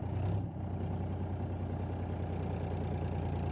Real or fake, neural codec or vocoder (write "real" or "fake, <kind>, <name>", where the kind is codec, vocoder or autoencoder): real